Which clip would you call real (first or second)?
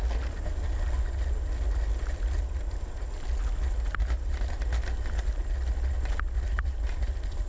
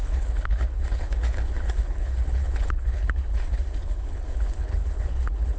first